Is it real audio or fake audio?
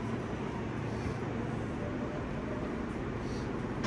real